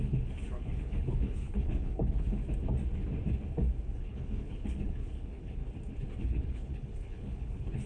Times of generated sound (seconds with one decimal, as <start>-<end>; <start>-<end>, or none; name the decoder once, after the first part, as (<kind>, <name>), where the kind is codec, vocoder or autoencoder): 0.0-2.4 (codec, HILCodec); 3.9-5.6; 6.2-7.9